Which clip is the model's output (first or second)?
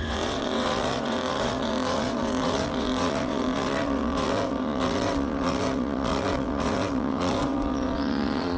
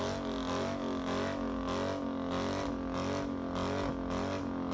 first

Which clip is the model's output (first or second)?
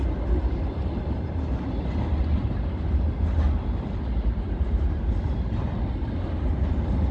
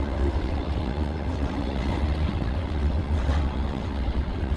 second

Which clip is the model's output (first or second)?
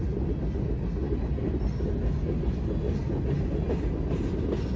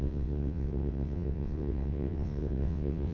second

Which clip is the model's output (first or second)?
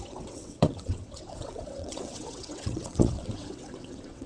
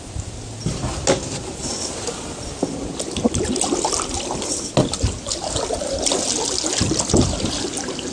first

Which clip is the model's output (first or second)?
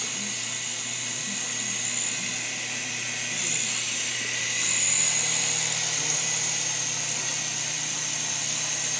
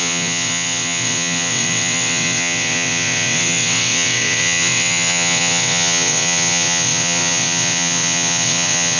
second